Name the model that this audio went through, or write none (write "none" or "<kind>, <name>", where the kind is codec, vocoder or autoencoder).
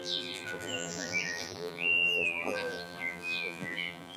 vocoder, BigVGAN v2